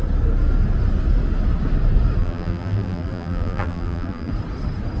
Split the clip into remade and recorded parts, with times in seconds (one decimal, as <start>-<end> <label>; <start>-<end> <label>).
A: 0.0-2.2 recorded; 2.2-4.3 remade; 4.3-5.0 recorded